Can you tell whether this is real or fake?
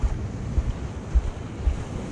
real